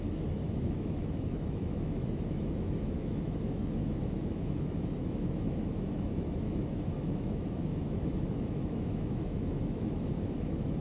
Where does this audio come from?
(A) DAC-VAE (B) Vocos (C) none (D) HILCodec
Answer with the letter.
A